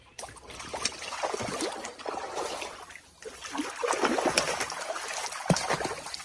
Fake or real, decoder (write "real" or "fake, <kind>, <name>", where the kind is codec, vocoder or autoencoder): real